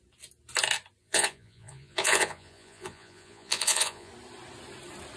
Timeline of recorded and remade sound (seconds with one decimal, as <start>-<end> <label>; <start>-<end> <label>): 0.0-1.0 recorded; 1.0-4.1 remade; 4.1-5.2 recorded

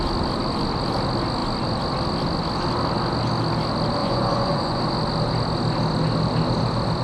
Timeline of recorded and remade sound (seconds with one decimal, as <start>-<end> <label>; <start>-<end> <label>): 0.0-4.0 recorded; 4.0-4.8 remade; 4.8-7.0 recorded

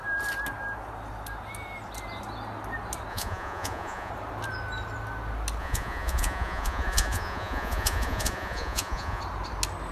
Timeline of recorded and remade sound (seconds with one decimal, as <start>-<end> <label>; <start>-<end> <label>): 0.0-3.1 recorded; 3.1-4.1 remade; 4.1-5.6 recorded; 5.6-9.2 remade; 9.2-9.9 recorded

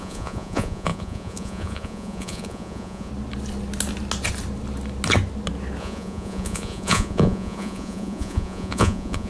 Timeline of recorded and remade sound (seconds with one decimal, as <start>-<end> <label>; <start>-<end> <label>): 0.0-3.1 remade; 3.1-5.8 recorded; 5.8-9.3 remade

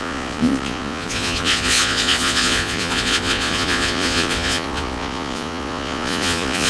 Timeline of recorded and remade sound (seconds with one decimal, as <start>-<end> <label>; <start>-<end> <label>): 0.0-6.7 remade

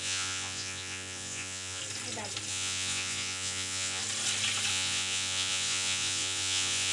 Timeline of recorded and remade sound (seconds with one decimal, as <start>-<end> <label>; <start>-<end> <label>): 0.0-1.8 remade; 1.8-2.5 recorded; 2.5-4.0 remade; 4.0-4.7 recorded; 4.7-6.9 remade